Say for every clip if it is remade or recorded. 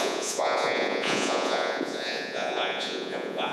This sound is remade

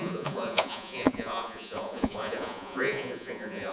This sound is remade